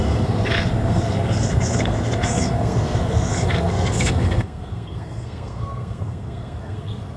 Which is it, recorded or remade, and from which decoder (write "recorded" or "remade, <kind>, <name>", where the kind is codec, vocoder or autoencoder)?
remade, codec, SNAC